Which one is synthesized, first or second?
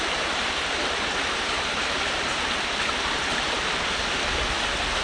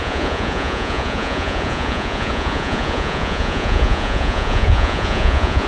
second